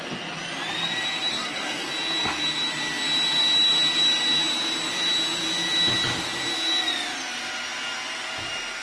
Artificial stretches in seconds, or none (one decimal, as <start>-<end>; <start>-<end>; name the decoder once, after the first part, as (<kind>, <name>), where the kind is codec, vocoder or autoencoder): 1.3-1.9 (codec, SNAC)